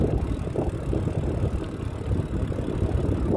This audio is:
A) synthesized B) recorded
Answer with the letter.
B